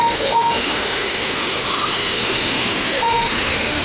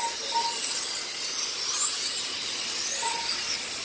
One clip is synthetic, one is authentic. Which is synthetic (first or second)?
first